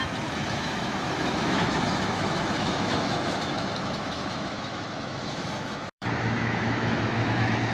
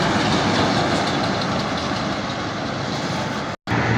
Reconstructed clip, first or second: first